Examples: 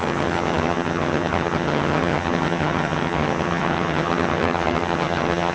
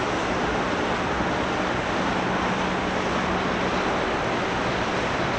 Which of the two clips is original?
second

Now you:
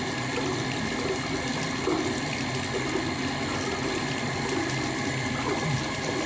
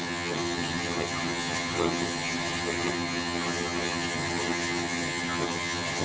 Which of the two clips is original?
first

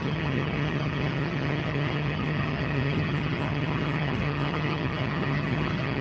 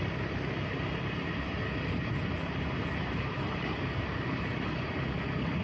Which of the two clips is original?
second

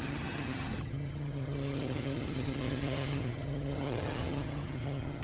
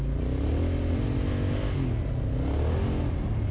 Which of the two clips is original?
second